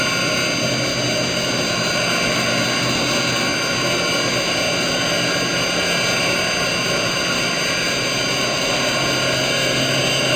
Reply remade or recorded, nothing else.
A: recorded